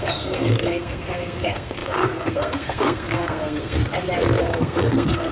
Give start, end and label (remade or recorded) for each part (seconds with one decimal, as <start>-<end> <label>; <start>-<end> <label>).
0.0-3.8 remade; 3.8-4.4 recorded; 4.4-5.3 remade